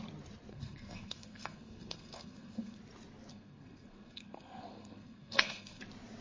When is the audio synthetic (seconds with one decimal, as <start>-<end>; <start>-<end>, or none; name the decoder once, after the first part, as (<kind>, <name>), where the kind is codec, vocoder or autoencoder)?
0.5-2.8 (codec, SNAC); 3.3-5.8

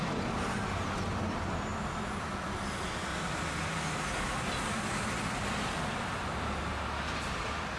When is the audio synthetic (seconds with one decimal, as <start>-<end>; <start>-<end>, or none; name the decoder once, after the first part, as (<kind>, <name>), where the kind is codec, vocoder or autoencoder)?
none

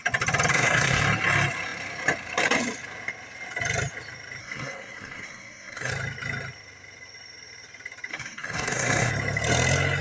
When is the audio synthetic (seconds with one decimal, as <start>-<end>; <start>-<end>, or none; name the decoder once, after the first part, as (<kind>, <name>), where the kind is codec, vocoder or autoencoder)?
0.5-1.0 (codec, SNAC); 4.4-5.9; 8.1-9.1

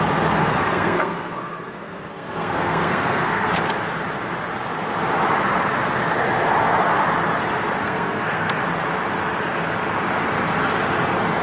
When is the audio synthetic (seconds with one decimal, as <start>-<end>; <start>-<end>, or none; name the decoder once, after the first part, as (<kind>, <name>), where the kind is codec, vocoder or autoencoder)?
0.4-3.5 (codec, SNAC); 7.8-8.6

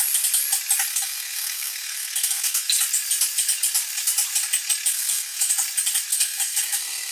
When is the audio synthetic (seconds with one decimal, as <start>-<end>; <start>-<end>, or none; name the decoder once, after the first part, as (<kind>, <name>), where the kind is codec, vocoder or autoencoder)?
0.9-2.7 (codec, SNAC); 4.9-5.5; 6.1-7.1

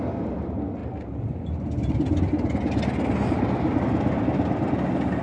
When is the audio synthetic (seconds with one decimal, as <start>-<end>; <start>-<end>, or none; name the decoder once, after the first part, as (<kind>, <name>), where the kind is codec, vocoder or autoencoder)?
none

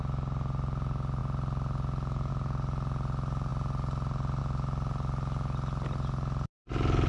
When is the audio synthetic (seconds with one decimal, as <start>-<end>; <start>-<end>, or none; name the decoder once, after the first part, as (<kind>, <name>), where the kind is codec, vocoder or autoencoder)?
none

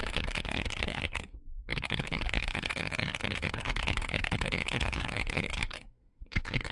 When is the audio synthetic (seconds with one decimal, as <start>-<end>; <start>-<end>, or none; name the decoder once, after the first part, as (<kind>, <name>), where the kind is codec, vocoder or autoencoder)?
0.0-6.7 (codec, SNAC)